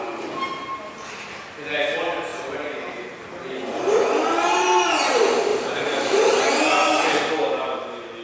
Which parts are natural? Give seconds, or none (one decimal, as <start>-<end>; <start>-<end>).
0.0-2.3; 3.3-5.5; 6.4-8.2